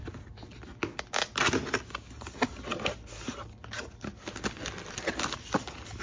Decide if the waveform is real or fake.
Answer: real